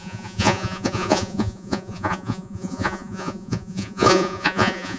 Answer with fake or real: fake